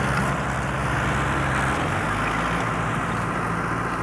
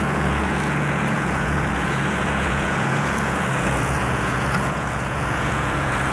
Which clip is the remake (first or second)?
second